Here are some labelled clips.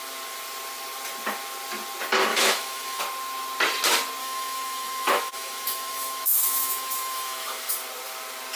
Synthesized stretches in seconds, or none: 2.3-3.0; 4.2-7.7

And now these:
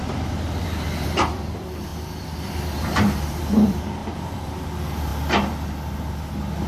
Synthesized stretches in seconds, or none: 0.0-5.1

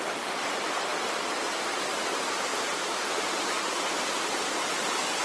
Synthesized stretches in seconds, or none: none

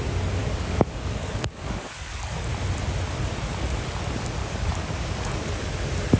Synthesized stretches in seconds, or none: 0.4-2.5; 4.4-5.8